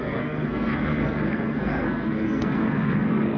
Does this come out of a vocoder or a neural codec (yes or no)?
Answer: yes